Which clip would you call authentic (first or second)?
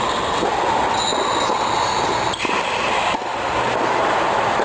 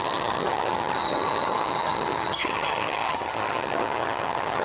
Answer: first